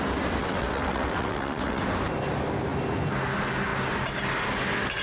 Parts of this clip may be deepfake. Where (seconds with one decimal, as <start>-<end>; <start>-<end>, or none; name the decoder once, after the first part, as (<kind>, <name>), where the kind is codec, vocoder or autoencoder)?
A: 0.4-1.8 (vocoder, WaveNeXt)